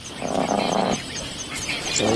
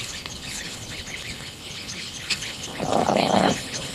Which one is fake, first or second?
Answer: second